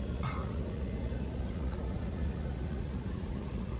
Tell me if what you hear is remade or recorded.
remade